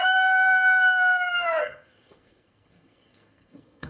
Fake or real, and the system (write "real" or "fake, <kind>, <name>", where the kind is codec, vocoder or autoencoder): fake, codec, SNAC